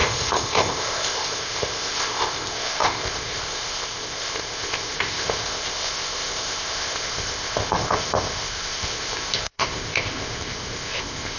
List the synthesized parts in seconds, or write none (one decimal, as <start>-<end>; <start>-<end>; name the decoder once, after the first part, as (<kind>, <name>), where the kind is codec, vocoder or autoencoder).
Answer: 0.0-11.4 (codec, ZipCodec)